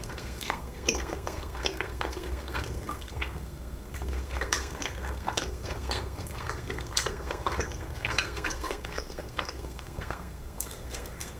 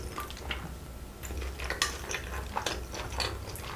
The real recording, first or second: second